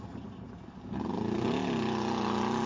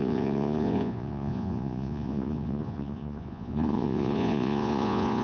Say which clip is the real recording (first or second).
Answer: first